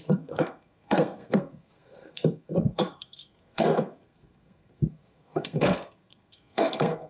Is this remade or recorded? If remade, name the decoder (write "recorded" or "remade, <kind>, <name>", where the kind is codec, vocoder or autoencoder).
remade, codec, SNAC